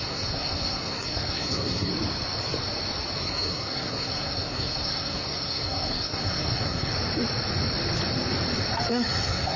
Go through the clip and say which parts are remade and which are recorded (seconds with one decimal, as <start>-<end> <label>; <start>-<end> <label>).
0.0-1.9 remade; 1.9-3.2 recorded; 3.2-6.9 remade; 6.9-8.9 recorded; 8.9-9.6 remade